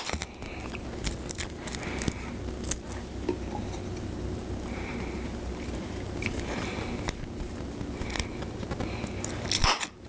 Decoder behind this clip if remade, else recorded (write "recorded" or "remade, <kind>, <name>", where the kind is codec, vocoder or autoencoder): recorded